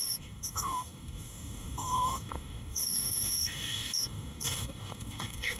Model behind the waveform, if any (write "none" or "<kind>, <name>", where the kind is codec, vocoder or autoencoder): codec, DAC